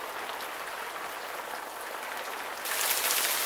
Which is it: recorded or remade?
recorded